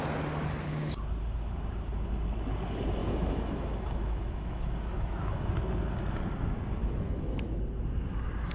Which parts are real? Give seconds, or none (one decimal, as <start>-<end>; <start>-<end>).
0.0-3.0; 5.5-6.8; 7.6-8.5